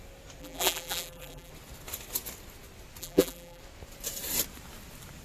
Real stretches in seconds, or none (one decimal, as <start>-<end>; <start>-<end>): 0.0-0.4; 1.5-3.0; 3.6-5.2